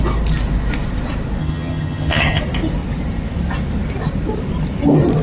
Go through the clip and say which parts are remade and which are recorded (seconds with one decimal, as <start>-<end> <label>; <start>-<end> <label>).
0.0-1.4 recorded; 1.4-2.4 remade; 2.4-5.2 recorded